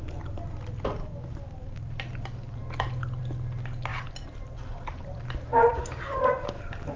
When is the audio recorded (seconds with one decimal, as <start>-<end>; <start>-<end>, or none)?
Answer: 0.0-3.9; 6.6-7.0